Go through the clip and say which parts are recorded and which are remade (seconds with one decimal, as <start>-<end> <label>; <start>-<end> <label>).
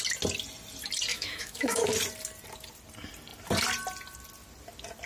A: 0.0-1.1 recorded; 1.1-1.9 remade; 1.9-5.1 recorded